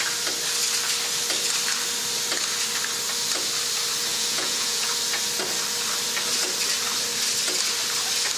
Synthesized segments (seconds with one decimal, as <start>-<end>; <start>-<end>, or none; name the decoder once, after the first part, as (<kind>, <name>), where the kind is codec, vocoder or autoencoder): 4.1-4.9 (vocoder, Vocos)